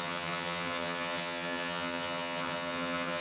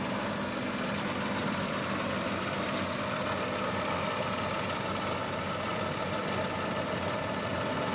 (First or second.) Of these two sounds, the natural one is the second